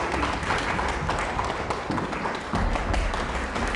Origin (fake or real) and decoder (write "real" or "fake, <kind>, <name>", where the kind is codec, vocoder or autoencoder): real